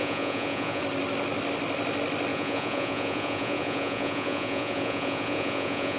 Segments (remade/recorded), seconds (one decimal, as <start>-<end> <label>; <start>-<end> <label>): 0.0-0.8 remade; 0.8-2.3 recorded; 2.3-6.0 remade